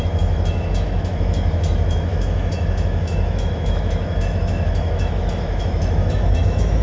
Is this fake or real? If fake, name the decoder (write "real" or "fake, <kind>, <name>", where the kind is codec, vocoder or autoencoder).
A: fake, autoencoder, DAC-VAE